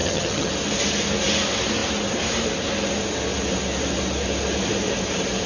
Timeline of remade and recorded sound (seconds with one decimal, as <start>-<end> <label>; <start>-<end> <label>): 0.0-0.5 remade; 0.5-5.5 recorded